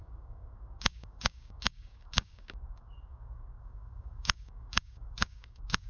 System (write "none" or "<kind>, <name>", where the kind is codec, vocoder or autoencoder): codec, DAC